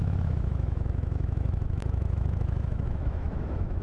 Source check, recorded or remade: remade